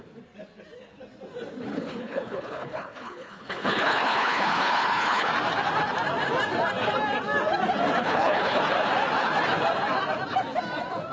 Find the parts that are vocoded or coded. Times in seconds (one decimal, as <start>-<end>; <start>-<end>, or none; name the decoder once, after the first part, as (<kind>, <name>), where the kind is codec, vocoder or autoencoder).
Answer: 1.7-5.3 (codec, HILCodec); 8.0-8.6